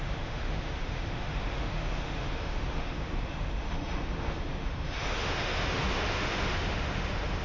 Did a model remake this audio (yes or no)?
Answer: yes